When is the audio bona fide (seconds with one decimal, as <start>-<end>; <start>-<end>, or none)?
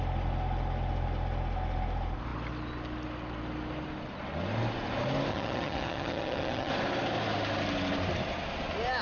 0.0-5.3; 6.7-9.0